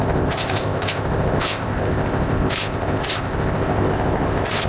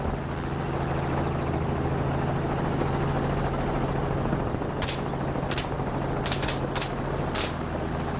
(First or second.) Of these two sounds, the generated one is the first